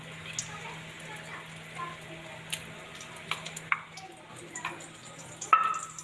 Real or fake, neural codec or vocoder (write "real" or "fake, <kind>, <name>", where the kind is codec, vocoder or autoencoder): real